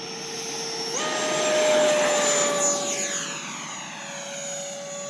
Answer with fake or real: real